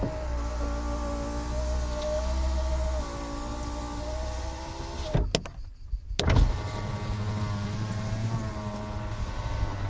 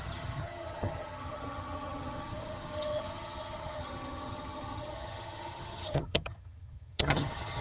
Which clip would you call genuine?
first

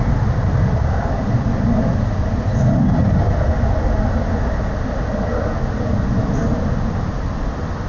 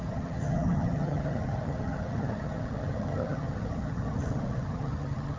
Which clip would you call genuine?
first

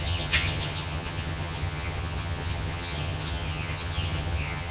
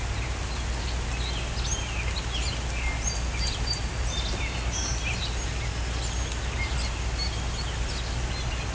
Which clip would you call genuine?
second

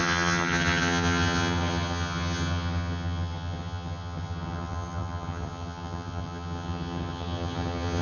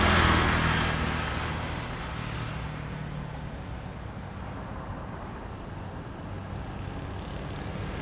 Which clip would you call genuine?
second